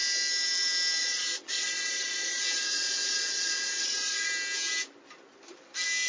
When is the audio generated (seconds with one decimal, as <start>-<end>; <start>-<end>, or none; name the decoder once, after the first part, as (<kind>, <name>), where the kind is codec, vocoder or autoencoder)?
1.0-4.3 (vocoder, Vocos)